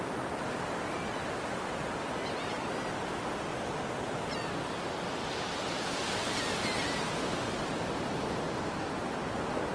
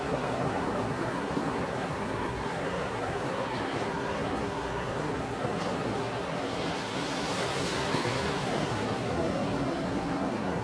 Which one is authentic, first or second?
first